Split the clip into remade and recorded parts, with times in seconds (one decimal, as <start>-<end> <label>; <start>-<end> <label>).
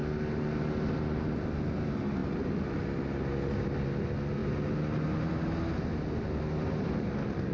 0.0-7.5 recorded